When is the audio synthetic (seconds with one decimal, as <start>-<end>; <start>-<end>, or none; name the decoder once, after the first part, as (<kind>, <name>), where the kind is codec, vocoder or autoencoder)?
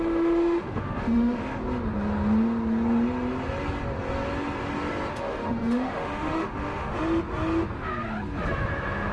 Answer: 0.0-1.6 (autoencoder, DAC-VAE); 5.1-6.9